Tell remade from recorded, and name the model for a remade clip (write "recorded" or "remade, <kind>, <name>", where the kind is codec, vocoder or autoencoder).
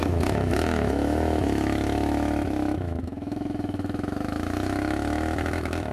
remade, autoencoder, DAC-VAE